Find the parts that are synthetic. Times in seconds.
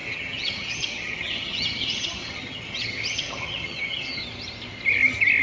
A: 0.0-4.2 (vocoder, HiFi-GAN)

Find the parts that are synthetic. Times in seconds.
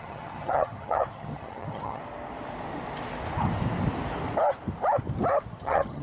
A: 0.0-2.0 (vocoder, HiFi-GAN); 5.6-6.0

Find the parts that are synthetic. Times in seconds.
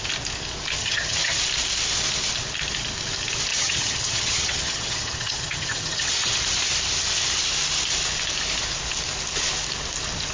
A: 0.8-1.4 (vocoder, HiFi-GAN); 3.5-6.4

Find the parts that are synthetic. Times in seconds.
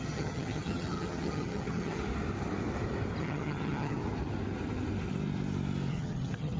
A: 0.0-2.0 (vocoder, HiFi-GAN); 3.2-4.0; 5.9-6.6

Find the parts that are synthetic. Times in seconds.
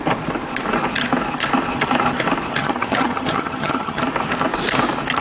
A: 2.6-4.0 (vocoder, HiFi-GAN)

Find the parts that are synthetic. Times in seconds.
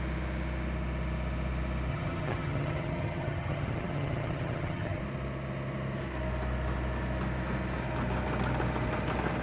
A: 1.9-5.0 (vocoder, HiFi-GAN)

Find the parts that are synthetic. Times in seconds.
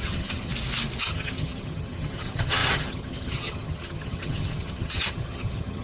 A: 0.0-0.5 (vocoder, HiFi-GAN); 1.0-5.8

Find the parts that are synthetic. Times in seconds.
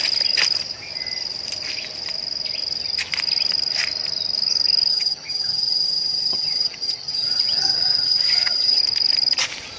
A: 4.9-8.8 (vocoder, HiFi-GAN)